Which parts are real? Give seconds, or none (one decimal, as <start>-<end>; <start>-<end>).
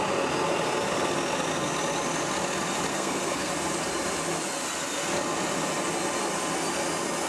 0.0-2.9; 3.5-7.3